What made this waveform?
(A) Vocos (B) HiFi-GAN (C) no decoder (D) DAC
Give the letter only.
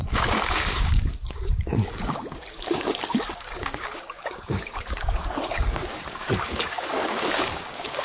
D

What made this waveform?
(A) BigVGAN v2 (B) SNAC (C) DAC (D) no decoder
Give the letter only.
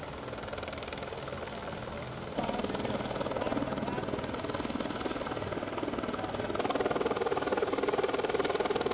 D